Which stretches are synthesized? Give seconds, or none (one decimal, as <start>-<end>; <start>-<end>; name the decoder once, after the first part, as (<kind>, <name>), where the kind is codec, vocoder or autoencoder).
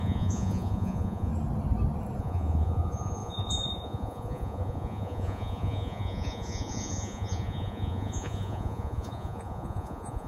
0.0-1.3 (vocoder, Vocos); 2.2-10.3